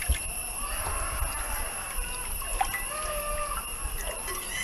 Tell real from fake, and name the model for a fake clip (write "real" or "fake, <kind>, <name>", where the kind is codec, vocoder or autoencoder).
real